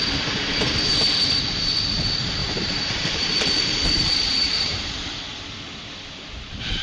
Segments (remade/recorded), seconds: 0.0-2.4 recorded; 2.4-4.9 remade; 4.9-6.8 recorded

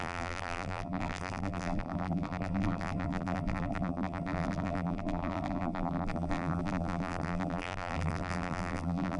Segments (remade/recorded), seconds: 0.0-9.2 remade

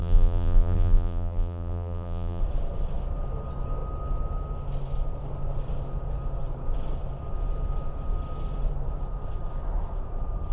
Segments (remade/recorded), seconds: 0.0-2.4 remade; 2.4-10.5 recorded

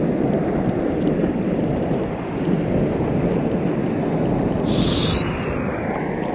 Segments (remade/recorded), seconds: 0.0-1.2 recorded; 1.2-3.4 remade; 3.4-6.3 recorded

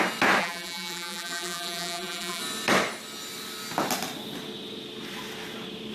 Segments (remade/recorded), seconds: 0.0-0.4 recorded; 0.4-2.4 remade; 2.4-5.9 recorded

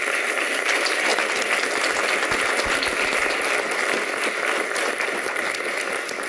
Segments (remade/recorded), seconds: 0.0-6.3 recorded

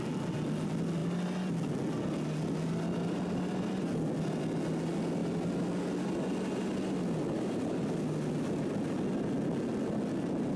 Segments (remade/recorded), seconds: 0.0-10.6 recorded